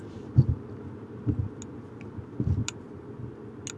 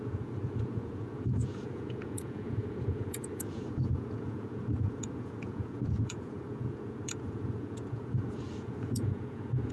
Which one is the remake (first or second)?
second